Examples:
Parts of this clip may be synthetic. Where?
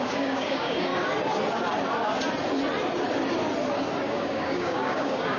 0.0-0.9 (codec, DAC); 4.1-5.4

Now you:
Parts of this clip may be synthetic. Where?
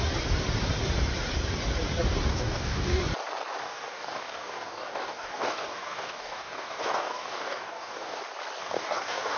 2.3-3.0 (codec, DAC); 3.6-8.2; 8.6-9.4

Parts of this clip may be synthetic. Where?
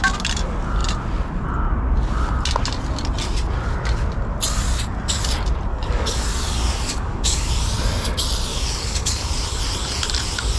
5.7-7.5 (codec, DAC); 8.5-9.3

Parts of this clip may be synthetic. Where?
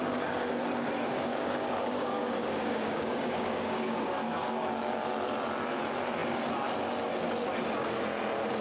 0.0-0.5 (codec, DAC); 1.3-5.0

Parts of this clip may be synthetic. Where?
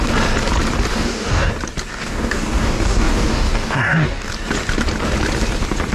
0.9-1.5 (codec, DAC); 1.9-4.3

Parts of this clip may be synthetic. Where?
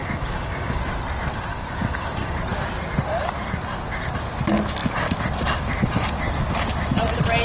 0.0-0.8 (codec, DAC); 1.5-2.4